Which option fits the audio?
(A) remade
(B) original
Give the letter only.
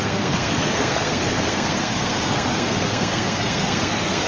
A